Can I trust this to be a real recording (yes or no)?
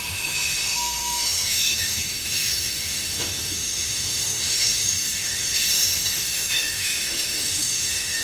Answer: no